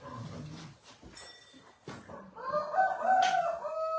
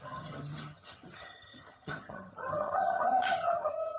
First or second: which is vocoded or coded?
second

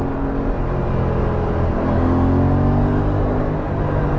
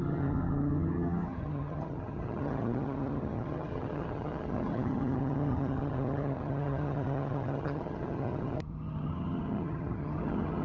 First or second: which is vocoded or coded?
second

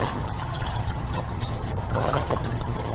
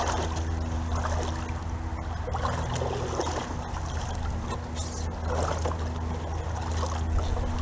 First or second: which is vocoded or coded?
first